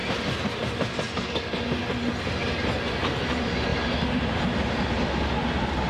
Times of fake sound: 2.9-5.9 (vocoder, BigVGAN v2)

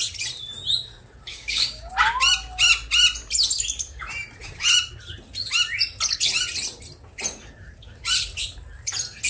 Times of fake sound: 1.3-1.9 (codec, DAC)

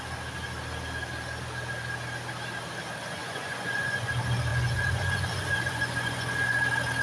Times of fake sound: 3.0-4.1 (vocoder, Vocos); 4.5-6.6

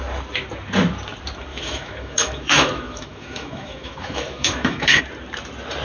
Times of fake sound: 1.5-5.0 (autoencoder, DAC-VAE)

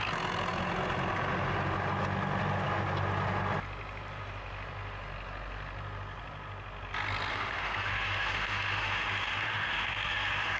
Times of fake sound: 7.3-10.6 (autoencoder, DAC-VAE)

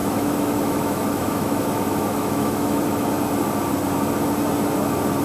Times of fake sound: 0.0-3.1 (autoencoder, DAC-VAE)

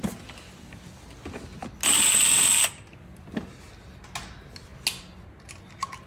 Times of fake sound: none

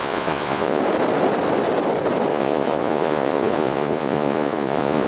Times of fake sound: 0.0-0.8 (vocoder, Vocos); 2.3-5.1